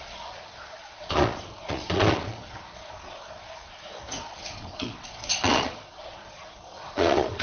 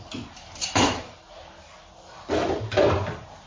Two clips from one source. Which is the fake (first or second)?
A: first